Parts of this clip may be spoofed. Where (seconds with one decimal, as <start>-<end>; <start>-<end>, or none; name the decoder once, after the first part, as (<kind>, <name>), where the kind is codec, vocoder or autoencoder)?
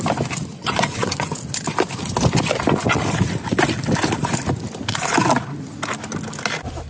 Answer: 0.5-1.4 (vocoder, Vocos)